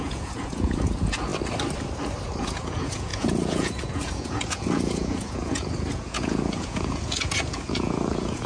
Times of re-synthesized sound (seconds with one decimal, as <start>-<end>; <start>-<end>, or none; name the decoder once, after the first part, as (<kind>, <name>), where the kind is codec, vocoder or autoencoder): 0.0-1.3 (vocoder, Vocos); 2.4-8.5